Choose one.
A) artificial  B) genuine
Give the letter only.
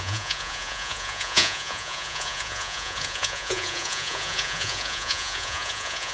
A